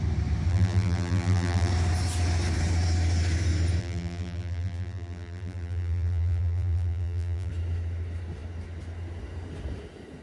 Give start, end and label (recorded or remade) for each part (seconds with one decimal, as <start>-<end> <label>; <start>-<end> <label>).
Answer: 0.0-0.5 recorded; 0.5-1.7 remade; 1.7-3.8 recorded; 3.8-7.5 remade; 7.5-10.2 recorded